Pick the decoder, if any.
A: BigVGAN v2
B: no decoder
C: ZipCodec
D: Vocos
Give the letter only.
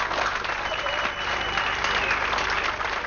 B